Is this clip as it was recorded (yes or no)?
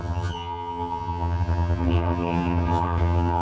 no